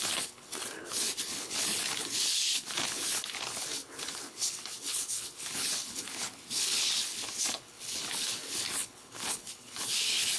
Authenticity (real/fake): fake